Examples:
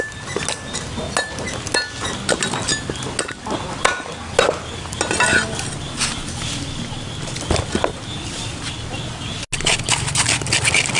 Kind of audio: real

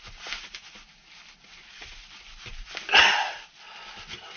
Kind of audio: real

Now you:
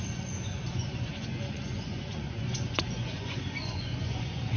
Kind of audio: fake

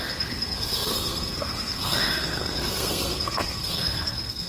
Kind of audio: fake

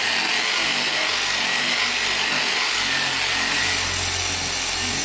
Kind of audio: real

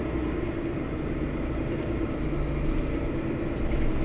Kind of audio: fake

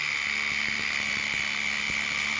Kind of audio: real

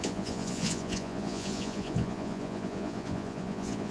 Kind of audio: fake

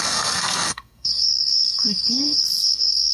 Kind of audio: fake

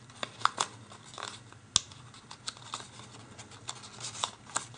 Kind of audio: real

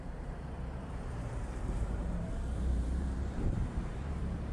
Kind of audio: fake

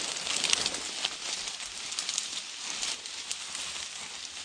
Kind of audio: real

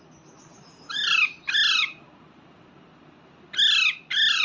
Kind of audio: real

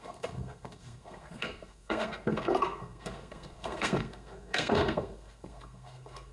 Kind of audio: fake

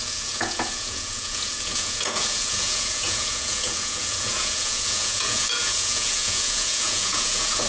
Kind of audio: fake